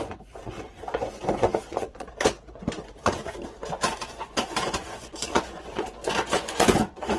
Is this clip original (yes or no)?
no